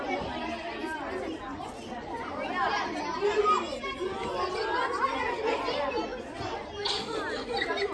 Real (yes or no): yes